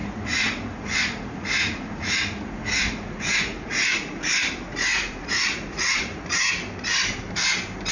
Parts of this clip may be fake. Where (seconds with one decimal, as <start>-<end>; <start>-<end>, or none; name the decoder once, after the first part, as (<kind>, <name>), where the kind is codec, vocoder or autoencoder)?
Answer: 0.0-4.2 (vocoder, Vocos); 4.9-6.5